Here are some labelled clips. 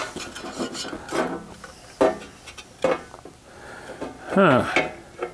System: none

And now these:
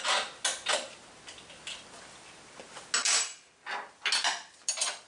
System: none